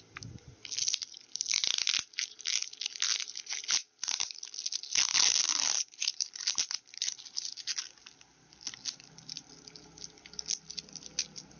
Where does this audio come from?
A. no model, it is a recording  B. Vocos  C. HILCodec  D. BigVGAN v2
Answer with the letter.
A